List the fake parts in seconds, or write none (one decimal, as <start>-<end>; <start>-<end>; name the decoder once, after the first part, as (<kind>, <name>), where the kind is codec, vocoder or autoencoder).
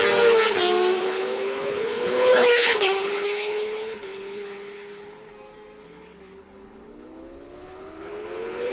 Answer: 1.0-5.3 (codec, HILCodec); 5.8-8.7